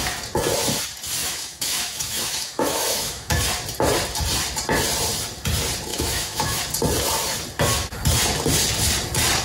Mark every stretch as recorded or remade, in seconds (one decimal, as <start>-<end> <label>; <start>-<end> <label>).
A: 0.0-1.2 recorded; 1.2-3.4 remade; 3.4-5.9 recorded; 5.9-6.6 remade; 6.6-9.4 recorded